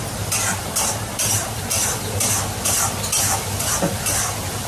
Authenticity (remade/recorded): remade